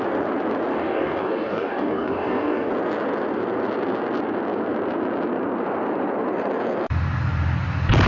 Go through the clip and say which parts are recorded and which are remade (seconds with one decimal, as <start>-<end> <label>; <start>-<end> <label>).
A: 0.0-0.7 recorded; 0.7-2.7 remade; 2.7-8.1 recorded